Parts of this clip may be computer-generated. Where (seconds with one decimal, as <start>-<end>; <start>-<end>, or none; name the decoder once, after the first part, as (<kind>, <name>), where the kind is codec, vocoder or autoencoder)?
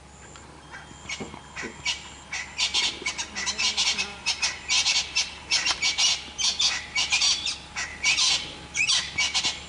none